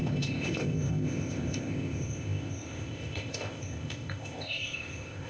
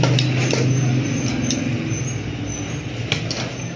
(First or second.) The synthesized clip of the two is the first